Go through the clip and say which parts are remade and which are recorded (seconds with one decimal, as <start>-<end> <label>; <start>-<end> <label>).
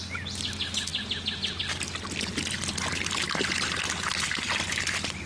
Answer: 0.0-5.3 recorded